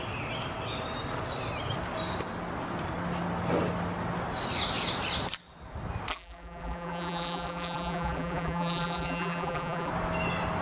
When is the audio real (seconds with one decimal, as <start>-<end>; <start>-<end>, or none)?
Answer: 0.0-6.1; 9.9-10.6